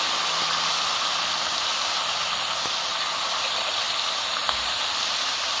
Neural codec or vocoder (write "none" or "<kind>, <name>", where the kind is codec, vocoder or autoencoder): none